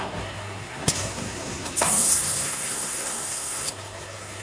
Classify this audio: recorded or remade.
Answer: remade